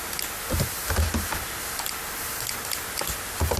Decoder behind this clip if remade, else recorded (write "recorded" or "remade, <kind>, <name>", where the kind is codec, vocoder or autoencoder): recorded